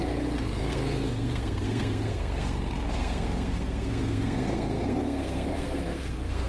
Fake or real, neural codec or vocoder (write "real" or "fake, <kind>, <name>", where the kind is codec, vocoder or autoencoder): fake, codec, SNAC